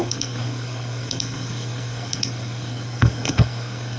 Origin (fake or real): fake